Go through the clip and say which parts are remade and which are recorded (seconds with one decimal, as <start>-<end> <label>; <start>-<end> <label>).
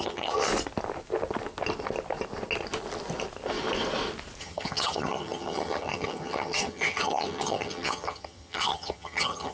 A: 0.0-0.5 remade; 0.5-4.4 recorded; 4.4-9.5 remade